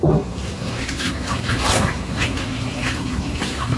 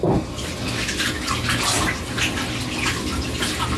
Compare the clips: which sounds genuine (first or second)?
second